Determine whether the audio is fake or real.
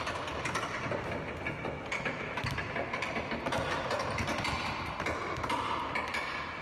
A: real